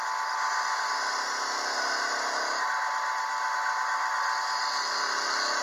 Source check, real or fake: real